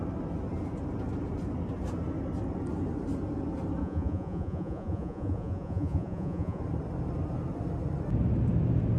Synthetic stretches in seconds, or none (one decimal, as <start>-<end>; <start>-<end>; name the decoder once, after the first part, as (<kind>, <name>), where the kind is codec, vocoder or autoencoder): 3.8-6.6 (vocoder, Vocos)